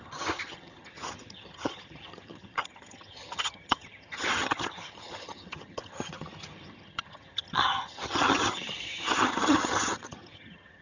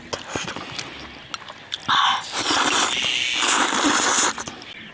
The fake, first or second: first